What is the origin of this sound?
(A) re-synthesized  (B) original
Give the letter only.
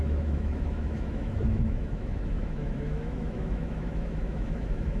A